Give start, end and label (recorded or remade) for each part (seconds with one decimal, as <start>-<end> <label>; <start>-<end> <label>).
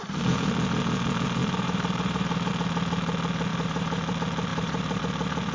0.0-1.4 recorded; 1.4-2.5 remade; 2.5-3.5 recorded; 3.5-4.1 remade; 4.1-4.5 recorded; 4.5-5.0 remade; 5.0-5.5 recorded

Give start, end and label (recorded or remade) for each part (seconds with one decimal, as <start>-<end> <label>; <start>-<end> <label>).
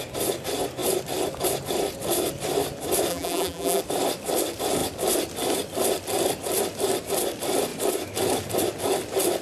0.0-3.1 recorded; 3.1-3.8 remade; 3.8-9.4 recorded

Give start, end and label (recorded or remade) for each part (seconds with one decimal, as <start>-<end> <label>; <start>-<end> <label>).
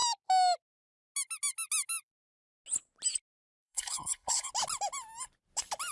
0.0-3.6 recorded; 3.6-4.5 remade; 4.5-5.9 recorded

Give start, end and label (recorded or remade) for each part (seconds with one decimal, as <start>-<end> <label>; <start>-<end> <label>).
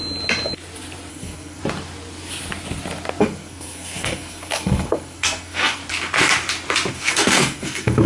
0.0-1.1 recorded; 1.1-1.6 remade; 1.6-3.2 recorded; 3.2-5.8 remade; 5.8-6.9 recorded; 6.9-8.1 remade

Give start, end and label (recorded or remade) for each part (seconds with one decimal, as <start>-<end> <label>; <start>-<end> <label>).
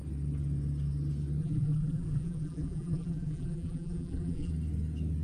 0.0-1.4 recorded; 1.4-4.5 remade; 4.5-5.2 recorded